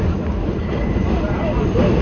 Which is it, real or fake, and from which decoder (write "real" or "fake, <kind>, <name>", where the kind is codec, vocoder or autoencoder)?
real